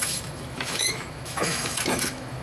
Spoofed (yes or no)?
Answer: yes